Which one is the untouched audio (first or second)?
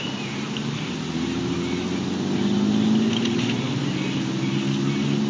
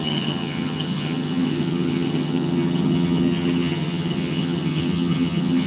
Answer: first